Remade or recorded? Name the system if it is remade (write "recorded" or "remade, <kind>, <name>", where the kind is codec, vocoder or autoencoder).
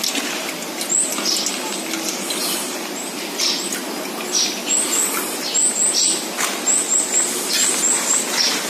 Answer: recorded